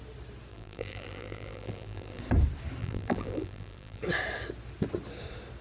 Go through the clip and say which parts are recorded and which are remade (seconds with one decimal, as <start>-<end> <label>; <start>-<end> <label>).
0.0-0.5 recorded; 0.5-2.2 remade; 2.2-2.8 recorded; 2.8-4.0 remade; 4.0-5.6 recorded